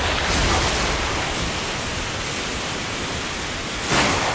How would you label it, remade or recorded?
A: recorded